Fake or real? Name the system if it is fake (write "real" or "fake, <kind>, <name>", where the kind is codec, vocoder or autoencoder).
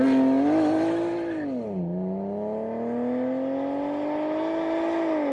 real